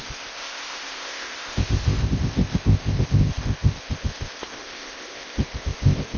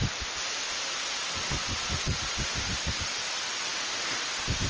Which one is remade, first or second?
first